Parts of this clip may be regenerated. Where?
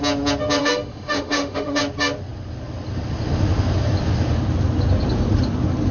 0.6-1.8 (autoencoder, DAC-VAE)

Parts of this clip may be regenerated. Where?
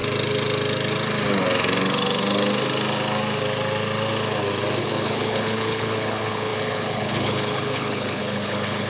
4.8-8.9 (codec, HILCodec)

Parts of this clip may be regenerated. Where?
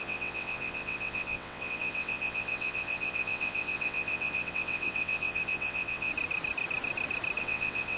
0.0-6.1 (vocoder, WaveNeXt); 7.4-8.0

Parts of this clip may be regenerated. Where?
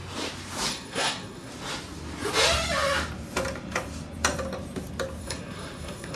0.7-1.5 (codec, SNAC); 5.2-6.2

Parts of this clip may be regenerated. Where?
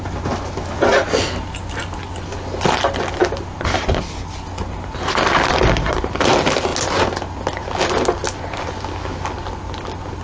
none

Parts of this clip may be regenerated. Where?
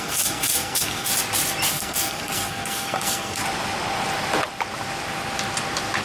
0.0-1.1 (codec, SNAC); 1.7-3.4